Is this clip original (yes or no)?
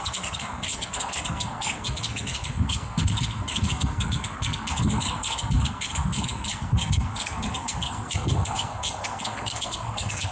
no